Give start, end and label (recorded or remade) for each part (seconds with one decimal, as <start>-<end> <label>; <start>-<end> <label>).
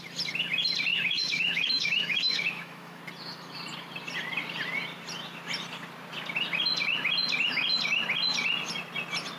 0.0-0.9 recorded; 0.9-3.0 remade; 3.0-9.4 recorded